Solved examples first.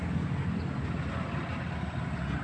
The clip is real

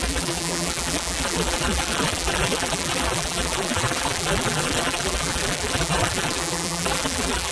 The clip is fake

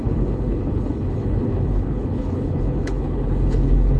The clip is fake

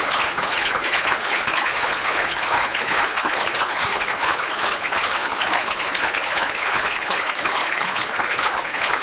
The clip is fake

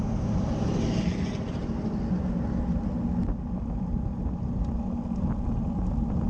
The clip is real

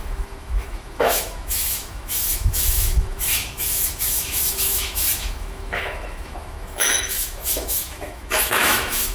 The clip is fake